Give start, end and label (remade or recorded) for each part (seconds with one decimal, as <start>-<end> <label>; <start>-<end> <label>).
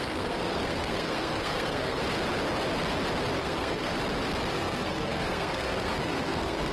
0.0-2.0 remade; 2.0-3.4 recorded; 3.4-3.9 remade; 3.9-4.5 recorded; 4.5-6.7 remade